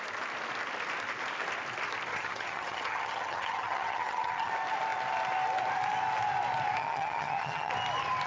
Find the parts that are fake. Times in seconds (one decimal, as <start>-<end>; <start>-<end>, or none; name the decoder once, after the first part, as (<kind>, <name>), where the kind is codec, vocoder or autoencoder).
2.1-4.5 (vocoder, HiFi-GAN); 6.8-7.7